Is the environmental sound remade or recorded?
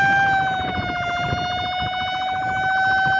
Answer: recorded